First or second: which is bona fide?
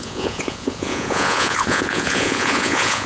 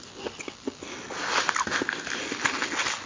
second